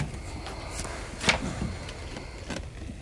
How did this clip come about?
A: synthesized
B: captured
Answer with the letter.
B